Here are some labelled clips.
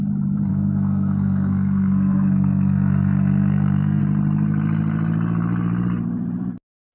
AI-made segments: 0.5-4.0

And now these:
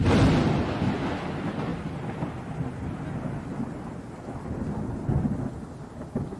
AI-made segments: none

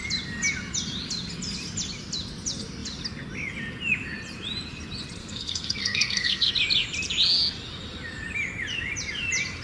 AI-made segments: 5.2-6.5

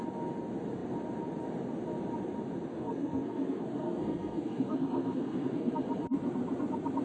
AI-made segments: 2.7-5.7

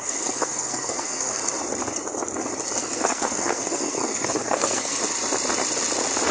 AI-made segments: 0.0-1.4; 2.8-5.0

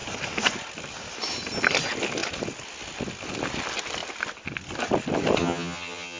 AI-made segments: 5.4-6.2

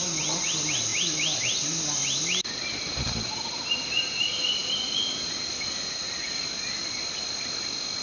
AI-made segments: none